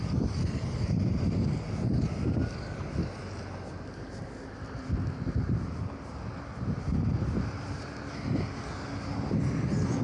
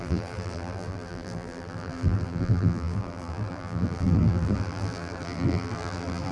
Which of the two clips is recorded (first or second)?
first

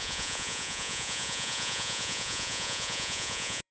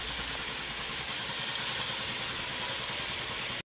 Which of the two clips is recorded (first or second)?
second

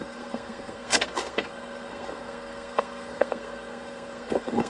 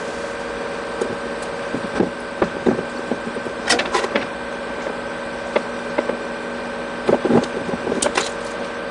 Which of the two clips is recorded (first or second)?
second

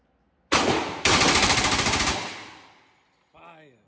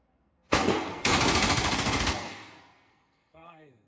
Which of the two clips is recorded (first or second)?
first